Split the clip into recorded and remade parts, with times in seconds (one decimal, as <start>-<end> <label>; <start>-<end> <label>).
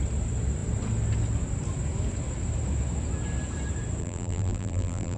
0.0-4.0 recorded; 4.0-5.2 remade